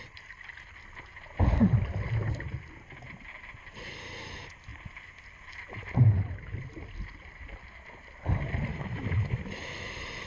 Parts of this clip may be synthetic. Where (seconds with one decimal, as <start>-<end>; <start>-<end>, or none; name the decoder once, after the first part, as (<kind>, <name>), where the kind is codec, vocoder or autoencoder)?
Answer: 8.7-9.4 (autoencoder, DAC-VAE)